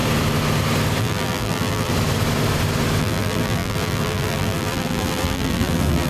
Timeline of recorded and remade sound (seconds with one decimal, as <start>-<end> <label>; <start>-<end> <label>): 0.0-1.0 recorded; 1.0-1.9 remade; 1.9-3.0 recorded; 3.0-6.1 remade